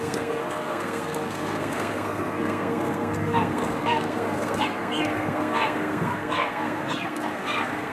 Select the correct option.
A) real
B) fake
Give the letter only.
B